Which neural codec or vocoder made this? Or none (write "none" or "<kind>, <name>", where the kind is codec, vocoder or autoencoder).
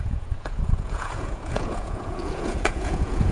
vocoder, Vocos